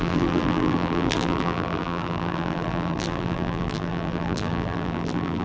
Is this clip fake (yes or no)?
yes